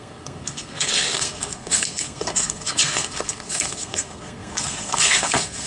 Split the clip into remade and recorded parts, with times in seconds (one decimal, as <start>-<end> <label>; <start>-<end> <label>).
0.0-5.7 remade